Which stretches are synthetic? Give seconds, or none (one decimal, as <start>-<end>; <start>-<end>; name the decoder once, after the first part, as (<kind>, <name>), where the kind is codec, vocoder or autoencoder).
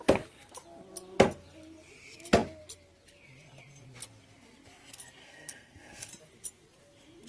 5.2-6.1 (codec, SNAC)